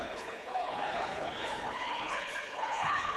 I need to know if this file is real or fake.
fake